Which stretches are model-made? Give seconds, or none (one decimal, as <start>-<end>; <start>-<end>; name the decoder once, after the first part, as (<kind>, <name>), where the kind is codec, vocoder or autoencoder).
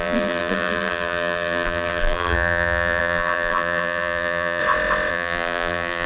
0.0-4.6 (vocoder, BigVGAN v2); 5.1-6.1